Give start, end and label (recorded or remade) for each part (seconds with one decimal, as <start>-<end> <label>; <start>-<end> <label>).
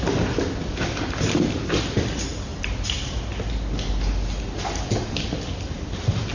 0.0-6.3 recorded